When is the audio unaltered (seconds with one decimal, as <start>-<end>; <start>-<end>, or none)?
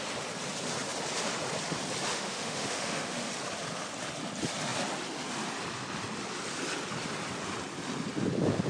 0.0-2.1; 3.3-8.7